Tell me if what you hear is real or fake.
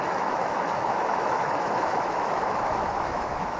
fake